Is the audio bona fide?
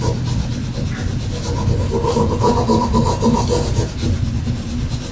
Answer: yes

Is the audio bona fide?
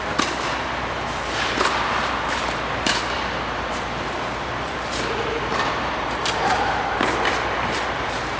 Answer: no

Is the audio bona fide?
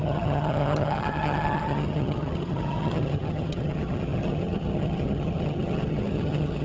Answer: no